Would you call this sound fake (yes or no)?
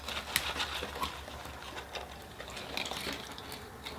no